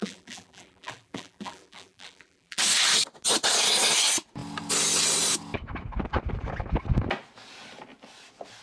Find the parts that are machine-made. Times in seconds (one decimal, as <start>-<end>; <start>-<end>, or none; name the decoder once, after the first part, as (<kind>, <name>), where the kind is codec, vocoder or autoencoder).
0.0-2.6 (vocoder, BigVGAN v2)